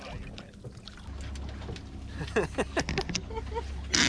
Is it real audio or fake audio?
real